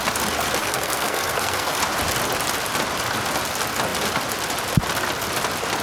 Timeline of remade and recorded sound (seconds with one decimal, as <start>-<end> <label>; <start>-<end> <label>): 0.0-0.6 recorded; 0.6-1.8 remade; 1.8-5.8 recorded